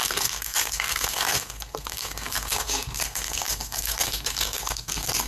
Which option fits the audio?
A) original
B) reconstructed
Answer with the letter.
B